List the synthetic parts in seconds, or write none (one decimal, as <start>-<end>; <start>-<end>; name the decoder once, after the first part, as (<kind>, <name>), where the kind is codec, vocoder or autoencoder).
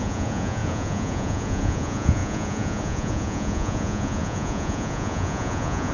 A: 0.0-5.9 (vocoder, Vocos)